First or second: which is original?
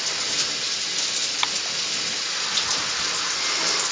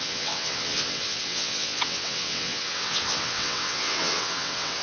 first